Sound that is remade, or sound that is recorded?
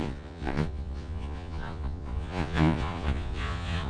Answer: remade